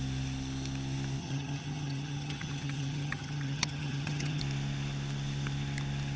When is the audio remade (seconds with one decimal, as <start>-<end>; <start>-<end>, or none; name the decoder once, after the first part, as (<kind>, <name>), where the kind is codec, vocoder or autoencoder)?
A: 1.2-4.4 (vocoder, HiFi-GAN)